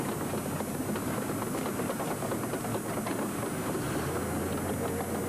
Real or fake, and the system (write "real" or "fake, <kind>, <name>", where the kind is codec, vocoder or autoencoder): real